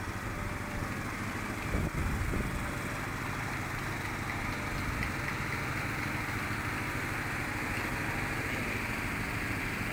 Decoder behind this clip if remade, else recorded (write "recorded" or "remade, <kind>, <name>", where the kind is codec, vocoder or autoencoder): recorded